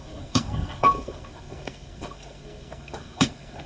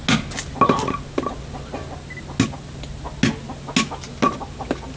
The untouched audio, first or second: second